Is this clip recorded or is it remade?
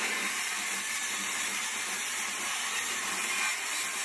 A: remade